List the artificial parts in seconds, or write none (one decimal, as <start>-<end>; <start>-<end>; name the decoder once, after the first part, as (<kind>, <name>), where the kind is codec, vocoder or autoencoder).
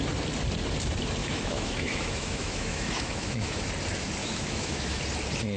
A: 1.2-3.7 (autoencoder, DAC-VAE); 4.2-5.0